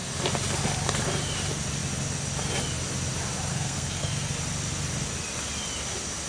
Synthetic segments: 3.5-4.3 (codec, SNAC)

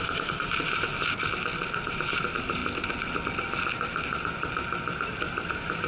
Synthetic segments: 0.0-0.9 (vocoder, BigVGAN v2); 1.8-2.6; 5.5-5.9

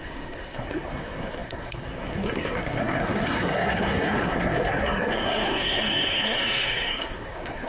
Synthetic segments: 0.0-7.7 (codec, SNAC)

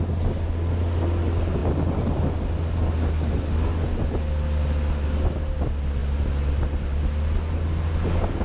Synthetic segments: none

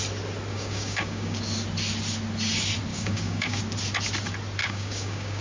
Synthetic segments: 0.5-1.4 (codec, DAC); 2.9-3.6; 4.6-5.4